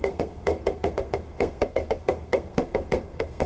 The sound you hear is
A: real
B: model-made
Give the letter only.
B